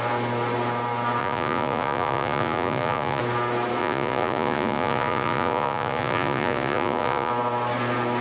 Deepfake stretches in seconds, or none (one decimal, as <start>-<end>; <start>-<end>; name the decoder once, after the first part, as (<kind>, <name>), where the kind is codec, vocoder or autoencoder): 1.2-3.2 (vocoder, Vocos); 3.8-7.3